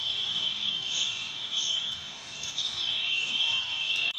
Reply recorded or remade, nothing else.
remade